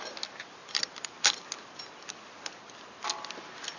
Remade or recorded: recorded